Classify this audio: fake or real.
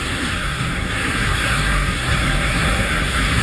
fake